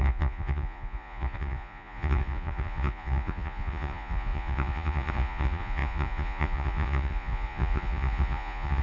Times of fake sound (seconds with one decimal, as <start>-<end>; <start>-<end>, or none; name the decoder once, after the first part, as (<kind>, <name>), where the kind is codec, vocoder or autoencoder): 0.0-8.8 (vocoder, Vocos)